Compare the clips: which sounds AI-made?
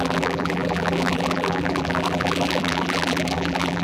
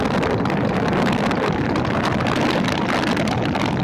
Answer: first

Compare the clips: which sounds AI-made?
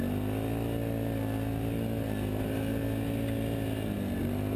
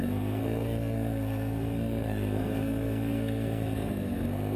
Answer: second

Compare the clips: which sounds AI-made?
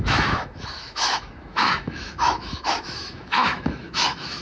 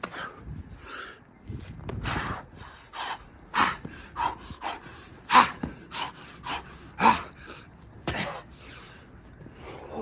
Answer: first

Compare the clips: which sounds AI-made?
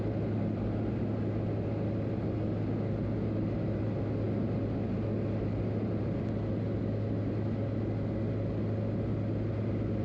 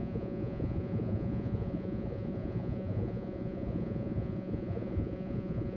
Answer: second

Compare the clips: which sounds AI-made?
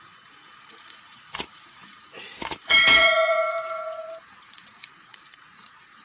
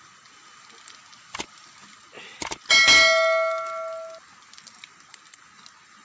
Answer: first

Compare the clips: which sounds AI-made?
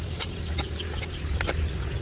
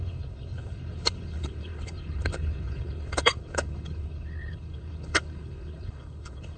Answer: second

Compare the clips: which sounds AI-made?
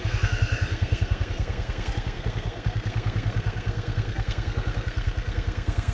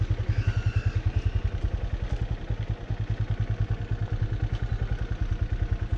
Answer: first